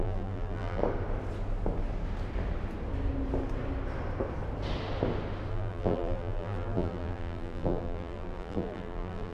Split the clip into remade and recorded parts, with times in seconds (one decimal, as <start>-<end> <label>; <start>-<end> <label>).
0.0-0.8 remade; 0.8-5.5 recorded; 5.5-9.3 remade